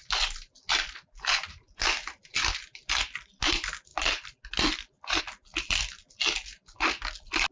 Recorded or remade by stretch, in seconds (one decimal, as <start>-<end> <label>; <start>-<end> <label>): 0.0-7.5 recorded